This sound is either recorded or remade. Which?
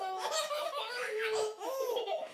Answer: remade